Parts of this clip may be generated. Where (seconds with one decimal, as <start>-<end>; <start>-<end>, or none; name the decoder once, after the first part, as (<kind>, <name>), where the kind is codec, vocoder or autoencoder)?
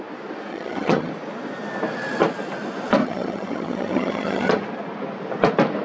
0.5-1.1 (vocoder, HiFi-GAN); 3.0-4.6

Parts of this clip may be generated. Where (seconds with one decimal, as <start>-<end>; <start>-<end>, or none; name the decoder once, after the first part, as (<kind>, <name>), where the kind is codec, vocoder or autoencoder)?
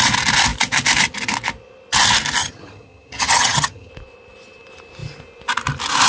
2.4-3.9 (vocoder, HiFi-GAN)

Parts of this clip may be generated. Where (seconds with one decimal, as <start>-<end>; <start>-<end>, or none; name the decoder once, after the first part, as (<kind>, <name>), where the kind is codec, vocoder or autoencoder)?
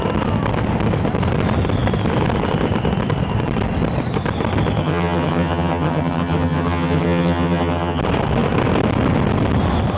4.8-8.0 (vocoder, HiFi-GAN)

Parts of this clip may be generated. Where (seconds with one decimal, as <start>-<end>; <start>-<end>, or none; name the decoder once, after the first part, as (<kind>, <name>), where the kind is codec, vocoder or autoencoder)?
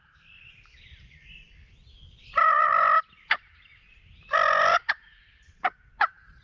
none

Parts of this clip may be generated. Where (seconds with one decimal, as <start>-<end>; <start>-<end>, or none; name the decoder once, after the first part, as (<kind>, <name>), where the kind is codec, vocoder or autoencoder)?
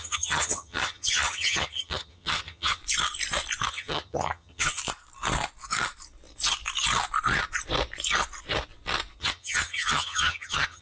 0.0-2.8 (vocoder, HiFi-GAN); 3.7-4.8; 9.2-10.8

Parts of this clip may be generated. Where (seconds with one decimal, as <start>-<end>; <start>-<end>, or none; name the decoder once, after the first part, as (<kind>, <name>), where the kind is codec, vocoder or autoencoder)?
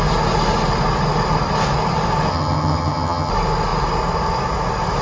2.3-3.3 (vocoder, HiFi-GAN)